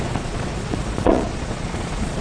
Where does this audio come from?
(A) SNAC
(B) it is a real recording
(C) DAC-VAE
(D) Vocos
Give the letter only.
D